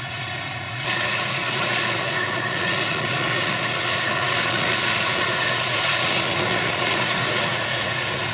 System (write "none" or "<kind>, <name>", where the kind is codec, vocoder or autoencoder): vocoder, Vocos